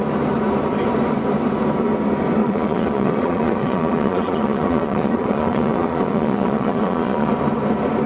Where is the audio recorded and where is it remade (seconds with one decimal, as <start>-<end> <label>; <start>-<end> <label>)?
0.0-2.4 recorded; 2.4-7.3 remade; 7.3-8.1 recorded